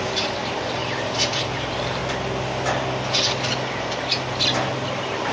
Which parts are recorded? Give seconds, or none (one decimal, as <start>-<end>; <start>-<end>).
2.0-5.3

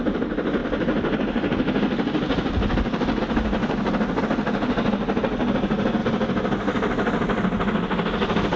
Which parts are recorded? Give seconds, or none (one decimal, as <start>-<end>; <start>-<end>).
0.0-8.6

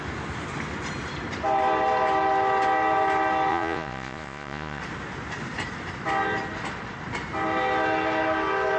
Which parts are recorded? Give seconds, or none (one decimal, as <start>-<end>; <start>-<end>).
0.0-3.5; 4.8-8.8

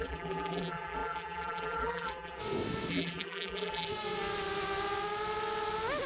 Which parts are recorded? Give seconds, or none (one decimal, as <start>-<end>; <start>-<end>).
2.4-2.9; 3.9-6.1